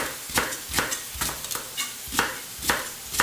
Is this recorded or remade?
remade